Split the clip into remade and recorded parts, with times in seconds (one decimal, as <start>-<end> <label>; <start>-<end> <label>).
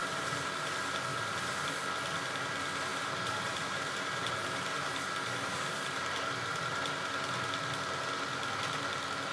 0.0-0.7 remade; 0.7-1.1 recorded; 1.1-1.7 remade; 1.7-2.9 recorded; 2.9-7.1 remade; 7.1-9.3 recorded